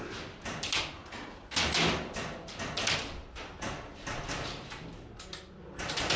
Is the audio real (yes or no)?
yes